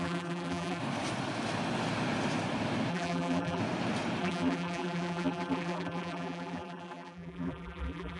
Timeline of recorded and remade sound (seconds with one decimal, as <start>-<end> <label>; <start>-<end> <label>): 0.0-0.8 remade; 0.8-2.9 recorded; 2.9-3.6 remade; 3.6-4.2 recorded; 4.2-8.2 remade